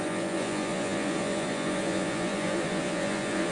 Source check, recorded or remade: remade